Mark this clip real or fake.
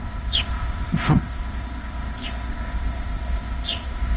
fake